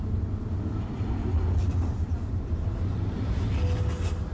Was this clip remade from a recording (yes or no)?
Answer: no